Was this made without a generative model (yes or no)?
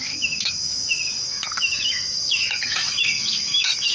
no